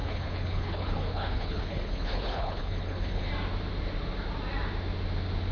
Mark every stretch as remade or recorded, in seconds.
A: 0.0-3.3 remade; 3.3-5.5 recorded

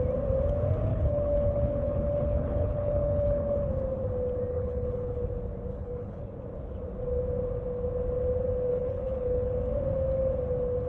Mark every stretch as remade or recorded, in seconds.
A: 0.0-0.9 recorded; 0.9-3.7 remade; 3.7-4.5 recorded; 4.5-5.2 remade; 5.2-5.7 recorded; 5.7-6.2 remade; 6.2-8.7 recorded; 8.7-9.5 remade; 9.5-10.9 recorded